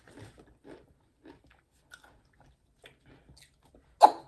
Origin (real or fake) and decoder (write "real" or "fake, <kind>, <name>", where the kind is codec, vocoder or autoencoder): real